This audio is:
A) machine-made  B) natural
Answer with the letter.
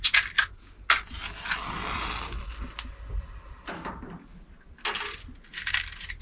B